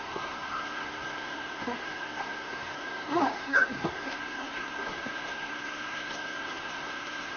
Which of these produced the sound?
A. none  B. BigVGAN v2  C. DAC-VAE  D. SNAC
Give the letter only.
D